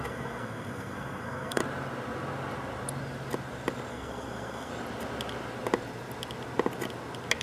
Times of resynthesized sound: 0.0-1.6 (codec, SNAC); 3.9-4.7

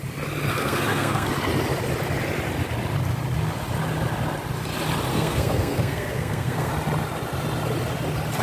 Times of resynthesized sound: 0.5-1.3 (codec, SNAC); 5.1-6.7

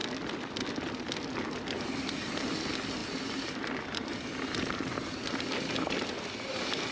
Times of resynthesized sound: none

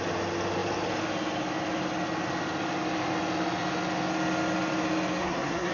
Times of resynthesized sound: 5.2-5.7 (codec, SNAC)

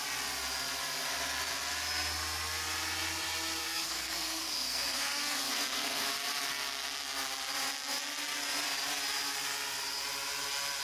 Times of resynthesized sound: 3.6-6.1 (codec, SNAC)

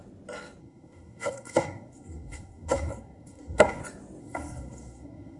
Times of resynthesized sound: 0.6-3.8 (codec, SNAC); 4.2-5.4

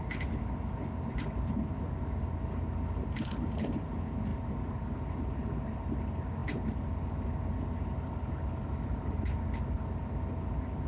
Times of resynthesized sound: none